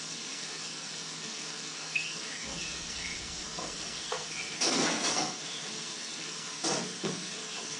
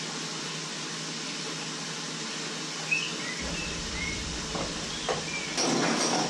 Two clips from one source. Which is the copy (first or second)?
first